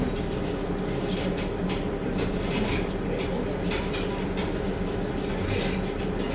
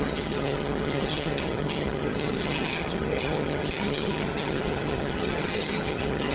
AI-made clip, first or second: second